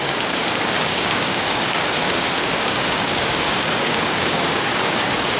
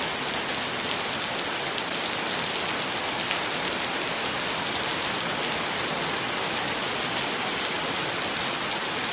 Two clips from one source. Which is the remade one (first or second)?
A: first